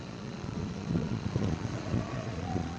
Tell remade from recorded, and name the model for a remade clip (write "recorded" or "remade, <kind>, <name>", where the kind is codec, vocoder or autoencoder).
remade, vocoder, Vocos